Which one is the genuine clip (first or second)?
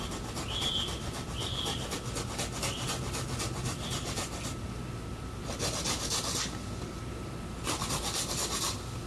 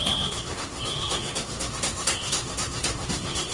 first